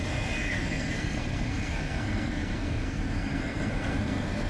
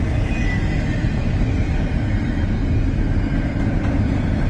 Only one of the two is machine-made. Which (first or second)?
first